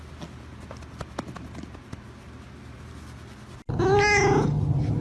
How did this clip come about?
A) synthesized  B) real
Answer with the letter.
B